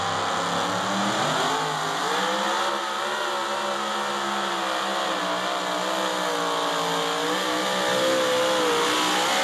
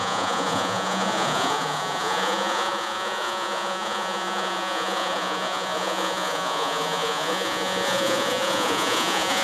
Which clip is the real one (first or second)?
first